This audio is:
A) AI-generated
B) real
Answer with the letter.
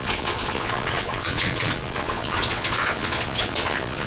A